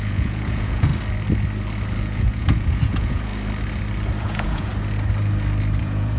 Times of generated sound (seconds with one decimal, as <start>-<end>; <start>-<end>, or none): 0.0-0.9; 2.0-3.3; 4.2-4.7; 5.8-6.2